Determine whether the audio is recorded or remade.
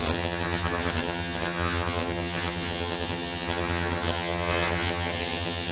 remade